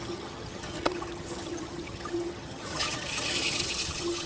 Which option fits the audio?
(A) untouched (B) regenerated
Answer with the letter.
B